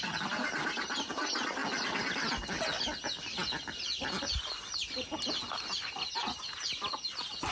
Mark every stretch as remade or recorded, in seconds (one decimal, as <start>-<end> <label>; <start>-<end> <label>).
0.0-7.5 recorded